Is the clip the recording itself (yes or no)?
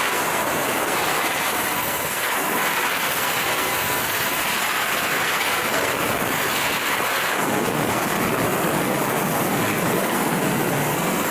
no